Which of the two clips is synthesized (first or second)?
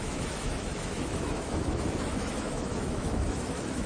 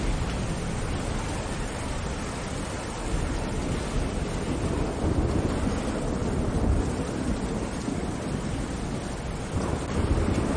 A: first